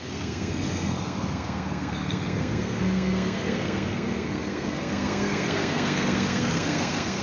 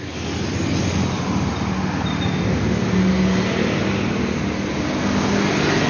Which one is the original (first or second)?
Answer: second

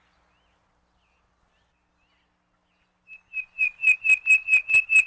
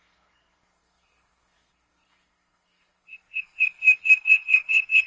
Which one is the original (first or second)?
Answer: first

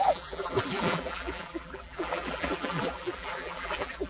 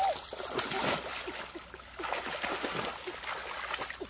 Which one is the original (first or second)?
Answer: second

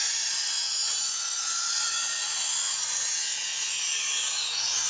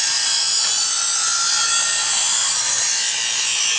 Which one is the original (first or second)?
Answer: second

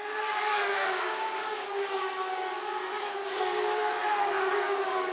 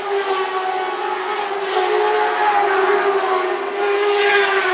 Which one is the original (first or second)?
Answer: second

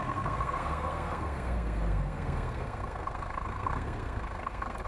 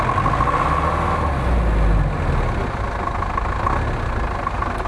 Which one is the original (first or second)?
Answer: second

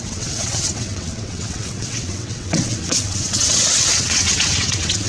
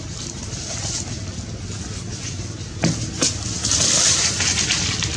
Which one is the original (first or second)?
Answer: second